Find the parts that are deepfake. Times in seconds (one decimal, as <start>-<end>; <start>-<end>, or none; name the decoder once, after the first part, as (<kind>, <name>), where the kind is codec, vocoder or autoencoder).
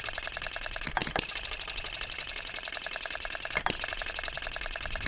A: 1.0-4.1 (vocoder, BigVGAN v2)